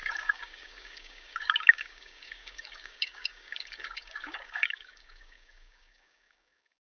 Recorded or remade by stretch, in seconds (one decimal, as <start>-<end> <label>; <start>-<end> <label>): 0.0-6.9 remade